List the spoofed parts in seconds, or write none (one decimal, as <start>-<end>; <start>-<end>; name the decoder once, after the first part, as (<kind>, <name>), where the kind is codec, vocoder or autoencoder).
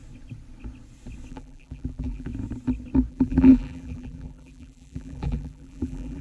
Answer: 1.3-2.3 (vocoder, BigVGAN v2); 3.1-6.2